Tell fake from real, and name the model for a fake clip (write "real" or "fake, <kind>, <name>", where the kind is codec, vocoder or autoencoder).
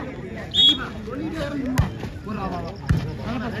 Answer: real